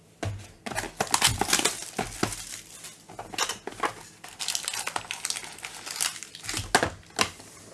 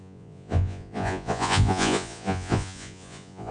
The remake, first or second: second